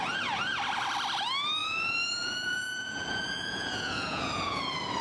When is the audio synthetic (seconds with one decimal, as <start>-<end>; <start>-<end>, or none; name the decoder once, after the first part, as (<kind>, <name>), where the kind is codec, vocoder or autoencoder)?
1.6-4.6 (vocoder, Vocos)